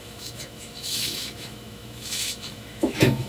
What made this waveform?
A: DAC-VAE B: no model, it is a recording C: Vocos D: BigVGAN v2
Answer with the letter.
A